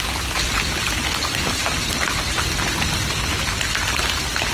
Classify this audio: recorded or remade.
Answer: recorded